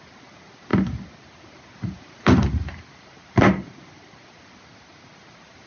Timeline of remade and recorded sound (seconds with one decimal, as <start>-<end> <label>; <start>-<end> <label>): 0.0-5.7 recorded